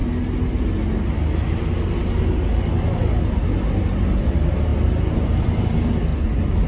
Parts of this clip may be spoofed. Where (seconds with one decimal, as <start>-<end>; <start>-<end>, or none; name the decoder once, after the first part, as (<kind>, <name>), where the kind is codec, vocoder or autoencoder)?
4.0-6.1 (vocoder, BigVGAN v2)